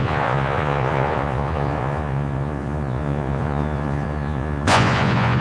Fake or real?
fake